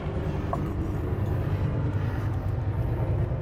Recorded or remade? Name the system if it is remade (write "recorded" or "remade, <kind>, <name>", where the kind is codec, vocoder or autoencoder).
recorded